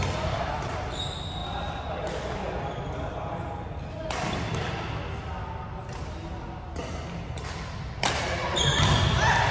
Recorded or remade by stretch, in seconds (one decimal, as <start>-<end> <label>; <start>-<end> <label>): 0.0-9.5 recorded